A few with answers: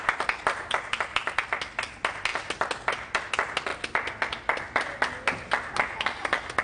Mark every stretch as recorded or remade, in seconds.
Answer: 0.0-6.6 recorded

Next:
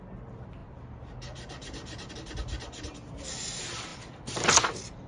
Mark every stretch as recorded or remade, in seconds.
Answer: 0.0-5.1 recorded

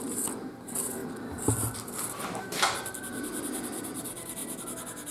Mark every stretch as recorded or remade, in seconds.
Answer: 0.0-1.0 remade; 1.0-2.4 recorded; 2.4-4.4 remade; 4.4-5.1 recorded

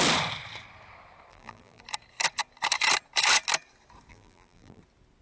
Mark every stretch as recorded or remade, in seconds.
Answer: 0.0-1.3 recorded; 1.3-1.8 remade; 1.8-4.1 recorded; 4.1-4.8 remade; 4.8-5.2 recorded

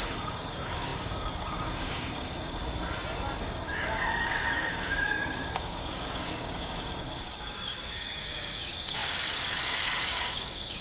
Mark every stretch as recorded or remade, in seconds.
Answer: 0.0-2.6 remade; 2.6-3.4 recorded; 3.4-10.8 remade

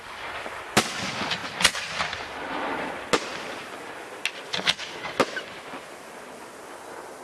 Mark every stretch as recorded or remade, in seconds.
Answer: 0.0-7.2 recorded

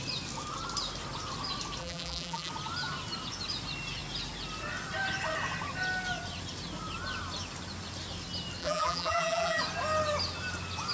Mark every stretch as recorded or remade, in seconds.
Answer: 0.0-1.8 recorded; 1.8-2.5 remade; 2.5-8.6 recorded; 8.6-9.6 remade; 9.6-10.9 recorded